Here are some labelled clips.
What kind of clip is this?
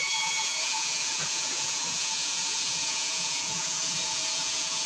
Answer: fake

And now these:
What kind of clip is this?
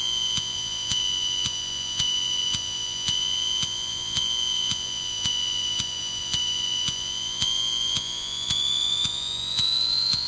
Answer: fake